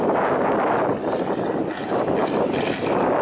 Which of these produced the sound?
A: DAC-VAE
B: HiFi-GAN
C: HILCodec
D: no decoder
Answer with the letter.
D